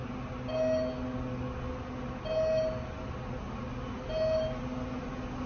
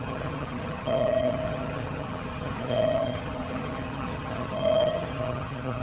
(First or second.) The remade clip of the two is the second